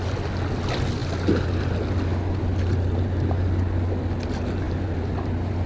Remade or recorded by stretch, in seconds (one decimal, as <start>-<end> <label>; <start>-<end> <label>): 0.0-5.7 recorded